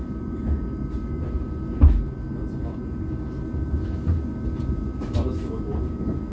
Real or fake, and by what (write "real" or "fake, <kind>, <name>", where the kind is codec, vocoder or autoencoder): real